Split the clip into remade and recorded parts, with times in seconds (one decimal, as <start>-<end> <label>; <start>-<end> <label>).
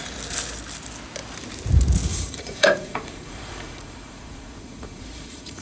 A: 0.0-2.1 recorded; 2.1-5.6 remade